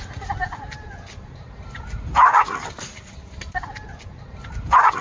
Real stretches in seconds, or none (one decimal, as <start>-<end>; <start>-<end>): 0.0-0.4; 3.4-5.0